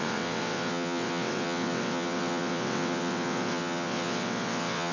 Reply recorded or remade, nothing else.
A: remade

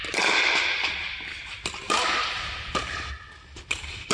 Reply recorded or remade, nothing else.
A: recorded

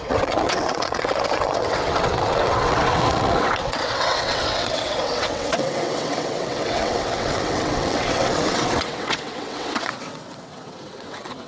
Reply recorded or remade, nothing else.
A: remade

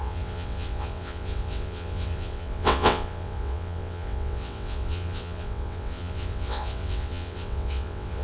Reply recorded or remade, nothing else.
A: remade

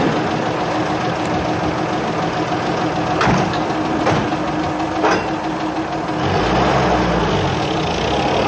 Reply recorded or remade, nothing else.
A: recorded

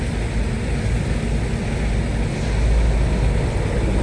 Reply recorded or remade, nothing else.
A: recorded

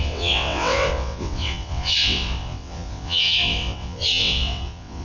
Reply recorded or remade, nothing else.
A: remade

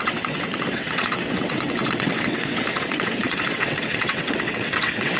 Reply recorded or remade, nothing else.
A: remade